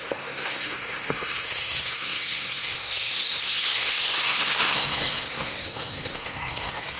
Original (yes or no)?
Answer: no